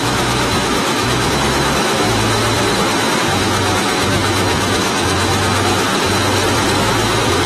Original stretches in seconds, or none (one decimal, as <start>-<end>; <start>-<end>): 2.4-3.0; 5.9-6.8